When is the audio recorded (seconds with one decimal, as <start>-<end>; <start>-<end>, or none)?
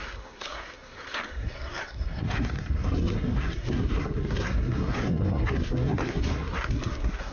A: none